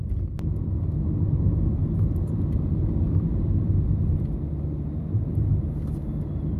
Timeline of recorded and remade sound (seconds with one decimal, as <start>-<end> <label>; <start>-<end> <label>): 0.0-1.8 recorded; 1.8-5.8 remade; 5.8-6.6 recorded